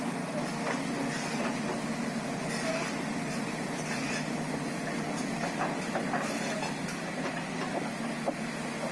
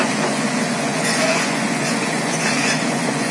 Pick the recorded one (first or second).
first